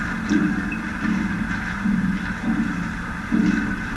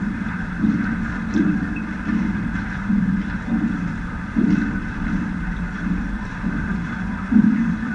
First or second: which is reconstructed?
second